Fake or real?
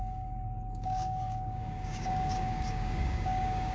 fake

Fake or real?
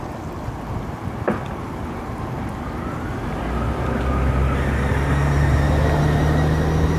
real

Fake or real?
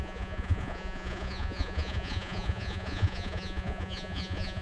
fake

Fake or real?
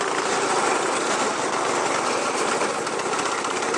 real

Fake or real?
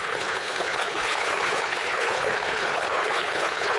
fake